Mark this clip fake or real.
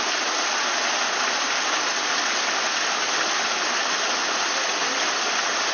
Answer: real